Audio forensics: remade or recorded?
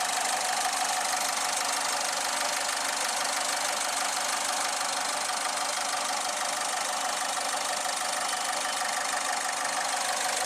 recorded